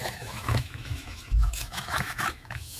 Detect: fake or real fake